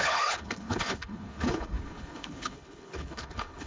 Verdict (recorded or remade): remade